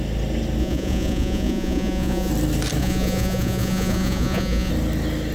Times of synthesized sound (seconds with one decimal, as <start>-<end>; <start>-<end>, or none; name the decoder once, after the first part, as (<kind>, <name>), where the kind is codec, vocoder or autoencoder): 0.6-2.3 (vocoder, Vocos); 2.8-4.7